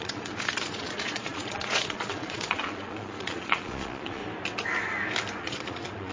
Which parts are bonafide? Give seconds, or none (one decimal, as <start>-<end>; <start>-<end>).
4.2-5.4